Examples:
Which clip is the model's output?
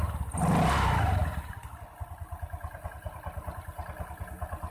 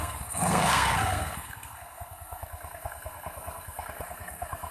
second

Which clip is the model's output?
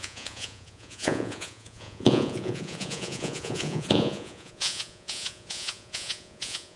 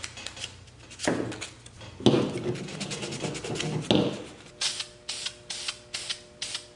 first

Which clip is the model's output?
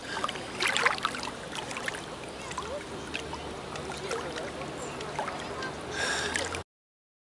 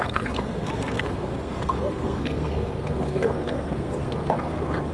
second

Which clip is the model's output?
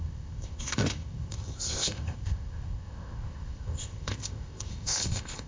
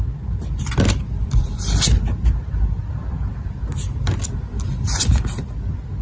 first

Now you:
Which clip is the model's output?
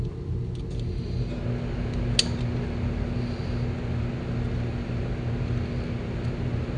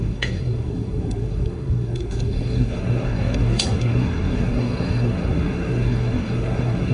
second